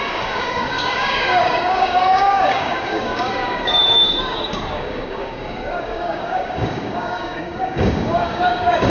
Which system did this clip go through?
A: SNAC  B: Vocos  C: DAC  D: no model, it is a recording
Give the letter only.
C